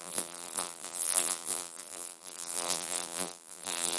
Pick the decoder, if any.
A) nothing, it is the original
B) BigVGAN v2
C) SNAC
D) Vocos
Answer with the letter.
B